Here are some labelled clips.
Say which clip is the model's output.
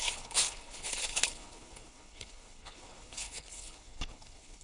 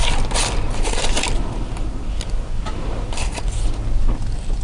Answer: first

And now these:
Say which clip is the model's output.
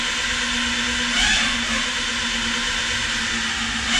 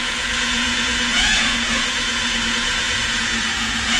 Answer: second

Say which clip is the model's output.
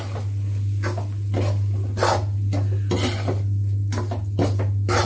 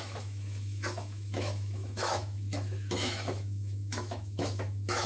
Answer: second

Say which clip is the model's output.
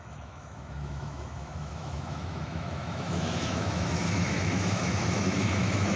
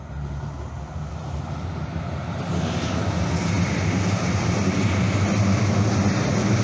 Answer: first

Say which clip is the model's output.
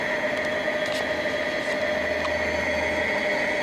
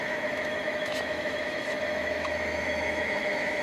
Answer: second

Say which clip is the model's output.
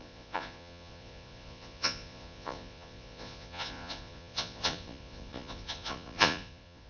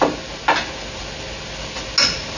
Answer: first